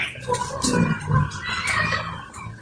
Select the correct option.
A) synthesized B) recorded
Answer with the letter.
B